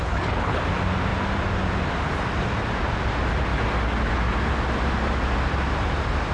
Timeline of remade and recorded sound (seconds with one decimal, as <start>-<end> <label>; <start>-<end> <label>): 0.0-0.6 remade; 0.6-6.3 recorded